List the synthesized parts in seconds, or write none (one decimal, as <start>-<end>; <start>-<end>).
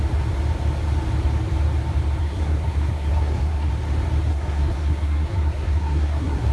2.2-3.7; 4.3-6.5